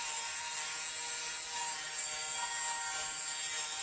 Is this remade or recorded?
recorded